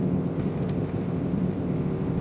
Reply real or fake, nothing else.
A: fake